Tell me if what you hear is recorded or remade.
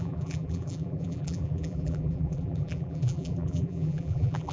remade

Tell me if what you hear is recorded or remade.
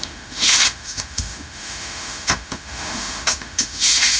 remade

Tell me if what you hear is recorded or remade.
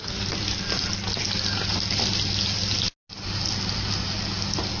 recorded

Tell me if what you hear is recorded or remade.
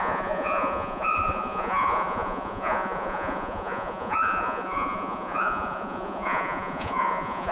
remade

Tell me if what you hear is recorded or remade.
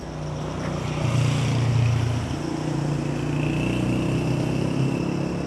recorded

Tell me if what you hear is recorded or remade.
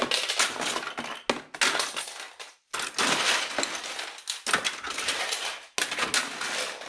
recorded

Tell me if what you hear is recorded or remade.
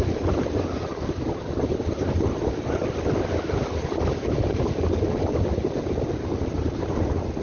recorded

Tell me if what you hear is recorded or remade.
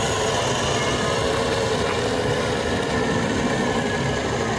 recorded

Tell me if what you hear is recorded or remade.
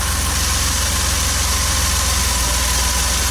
recorded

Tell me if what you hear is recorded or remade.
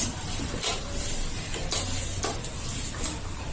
recorded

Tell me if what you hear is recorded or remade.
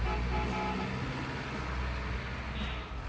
recorded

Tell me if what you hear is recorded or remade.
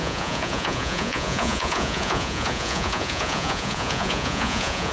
remade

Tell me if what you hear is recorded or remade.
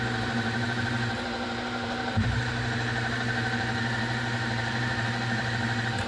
remade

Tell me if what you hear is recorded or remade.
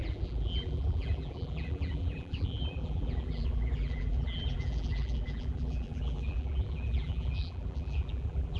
remade